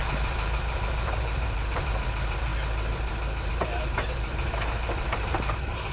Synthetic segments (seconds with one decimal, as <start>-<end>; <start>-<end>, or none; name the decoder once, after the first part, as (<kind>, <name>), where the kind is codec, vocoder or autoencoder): 0.0-2.5 (vocoder, BigVGAN v2); 3.5-5.9